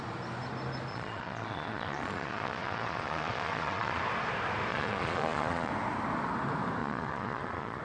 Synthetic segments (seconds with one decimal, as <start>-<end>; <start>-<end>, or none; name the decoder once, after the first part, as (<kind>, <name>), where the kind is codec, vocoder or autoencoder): 0.9-4.0 (vocoder, Vocos); 4.7-5.7; 6.8-7.8